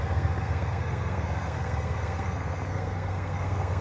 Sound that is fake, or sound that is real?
fake